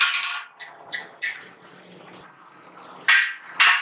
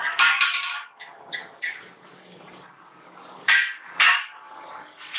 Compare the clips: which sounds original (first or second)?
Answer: first